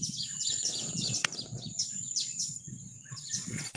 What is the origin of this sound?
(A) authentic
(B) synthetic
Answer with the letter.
B